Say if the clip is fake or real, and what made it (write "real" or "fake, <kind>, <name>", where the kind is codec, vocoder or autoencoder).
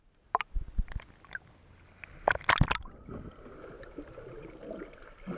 real